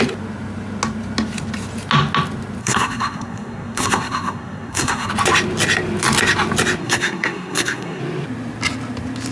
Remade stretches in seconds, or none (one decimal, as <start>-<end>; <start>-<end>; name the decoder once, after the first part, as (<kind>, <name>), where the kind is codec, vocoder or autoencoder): 2.6-5.1 (codec, SNAC); 6.8-8.0